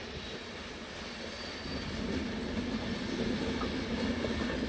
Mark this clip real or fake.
real